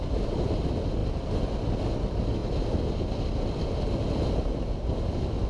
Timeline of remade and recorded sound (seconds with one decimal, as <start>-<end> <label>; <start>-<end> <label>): 0.0-5.5 recorded